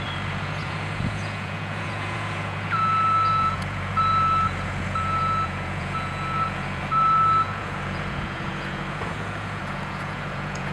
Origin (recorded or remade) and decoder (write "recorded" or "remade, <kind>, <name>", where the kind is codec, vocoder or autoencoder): remade, vocoder, Vocos